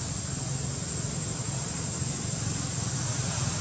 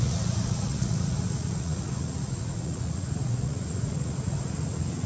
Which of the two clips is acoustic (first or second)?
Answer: first